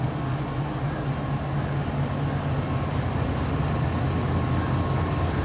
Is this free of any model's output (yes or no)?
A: yes